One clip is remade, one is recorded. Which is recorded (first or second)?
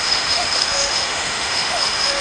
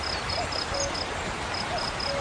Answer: second